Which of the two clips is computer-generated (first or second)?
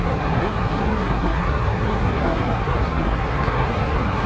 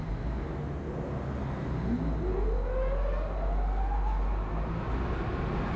first